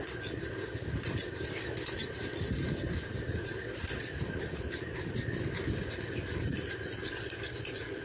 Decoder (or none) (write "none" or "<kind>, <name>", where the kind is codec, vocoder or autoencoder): none